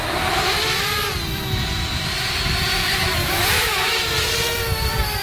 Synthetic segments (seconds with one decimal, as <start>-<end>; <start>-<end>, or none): 2.8-4.1